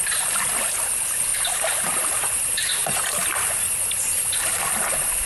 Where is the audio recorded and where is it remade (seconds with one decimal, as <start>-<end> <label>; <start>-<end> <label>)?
0.0-5.3 recorded